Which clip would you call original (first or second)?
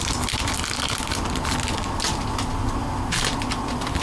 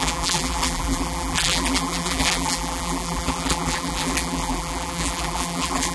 first